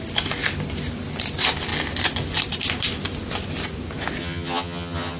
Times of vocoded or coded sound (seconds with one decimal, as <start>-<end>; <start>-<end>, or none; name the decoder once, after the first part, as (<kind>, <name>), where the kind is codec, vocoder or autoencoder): 4.2-5.2 (vocoder, HiFi-GAN)